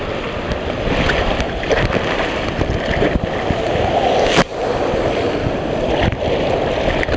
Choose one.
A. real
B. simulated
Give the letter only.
A